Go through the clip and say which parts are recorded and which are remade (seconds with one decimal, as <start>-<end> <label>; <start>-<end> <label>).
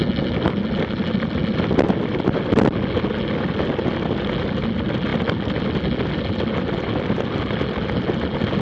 0.0-8.6 recorded